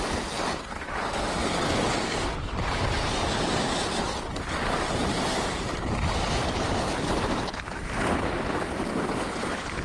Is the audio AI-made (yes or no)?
yes